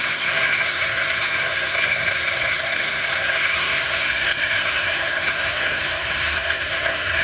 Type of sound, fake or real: fake